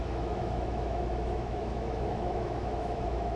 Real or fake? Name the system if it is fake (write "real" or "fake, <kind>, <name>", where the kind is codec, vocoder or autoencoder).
fake, autoencoder, DAC-VAE